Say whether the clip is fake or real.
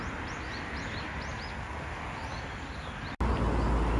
real